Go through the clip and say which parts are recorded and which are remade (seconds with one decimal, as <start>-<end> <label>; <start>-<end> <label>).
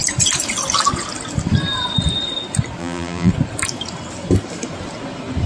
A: 0.0-2.8 recorded; 2.8-3.3 remade; 3.3-5.5 recorded